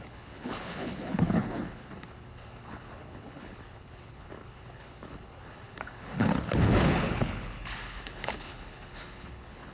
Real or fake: fake